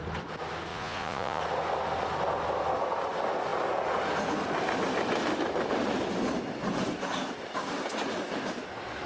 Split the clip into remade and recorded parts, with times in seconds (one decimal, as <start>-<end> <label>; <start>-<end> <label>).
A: 0.0-0.7 recorded; 0.7-1.4 remade; 1.4-9.1 recorded